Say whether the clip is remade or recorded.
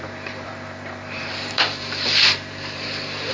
remade